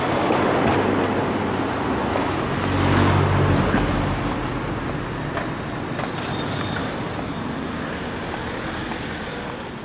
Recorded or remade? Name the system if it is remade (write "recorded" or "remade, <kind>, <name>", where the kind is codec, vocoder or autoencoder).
recorded